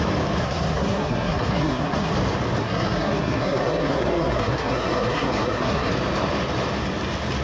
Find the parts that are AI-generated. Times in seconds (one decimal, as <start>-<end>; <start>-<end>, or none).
0.4-2.1; 2.6-5.9